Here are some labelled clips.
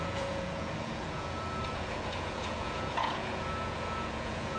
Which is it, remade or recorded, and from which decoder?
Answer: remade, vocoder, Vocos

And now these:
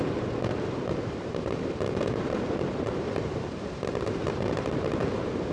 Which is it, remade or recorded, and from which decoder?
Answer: remade, vocoder, BigVGAN v2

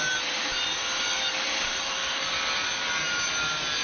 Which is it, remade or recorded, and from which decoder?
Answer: recorded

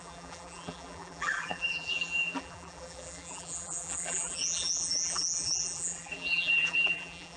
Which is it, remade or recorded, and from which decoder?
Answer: remade, vocoder, BigVGAN v2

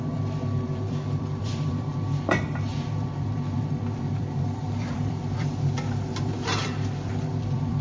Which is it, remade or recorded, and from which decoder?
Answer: remade, vocoder, BigVGAN v2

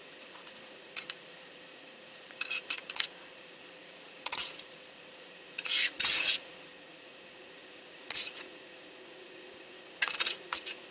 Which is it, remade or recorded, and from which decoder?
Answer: remade, vocoder, Vocos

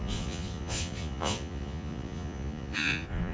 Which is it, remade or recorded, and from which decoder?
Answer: remade, vocoder, Vocos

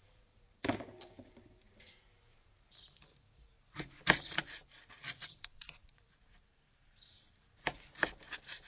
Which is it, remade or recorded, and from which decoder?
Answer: remade, vocoder, BigVGAN v2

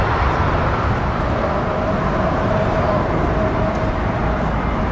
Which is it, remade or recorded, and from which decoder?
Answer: recorded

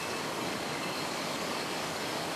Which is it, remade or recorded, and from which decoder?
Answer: remade, codec, DAC